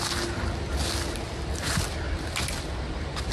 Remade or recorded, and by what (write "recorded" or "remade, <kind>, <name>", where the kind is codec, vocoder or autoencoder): recorded